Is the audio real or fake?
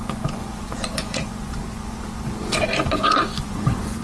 fake